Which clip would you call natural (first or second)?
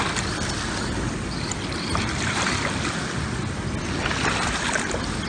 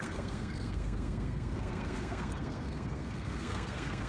first